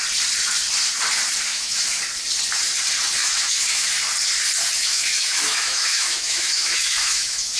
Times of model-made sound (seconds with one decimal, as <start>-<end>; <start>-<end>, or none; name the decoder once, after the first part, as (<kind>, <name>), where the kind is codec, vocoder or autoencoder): 1.5-2.0 (autoencoder, DAC-VAE); 3.2-3.9; 4.8-7.6